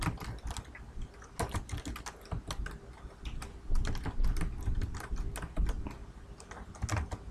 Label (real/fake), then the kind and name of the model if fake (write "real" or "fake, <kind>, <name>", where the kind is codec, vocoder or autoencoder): real